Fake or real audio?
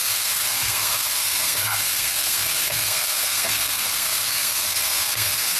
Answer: fake